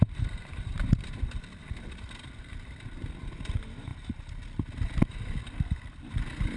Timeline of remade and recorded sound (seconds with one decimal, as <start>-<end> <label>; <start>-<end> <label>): 0.0-6.6 recorded